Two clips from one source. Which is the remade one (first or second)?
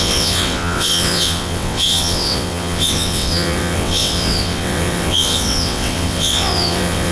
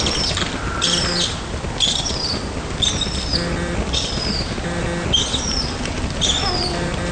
first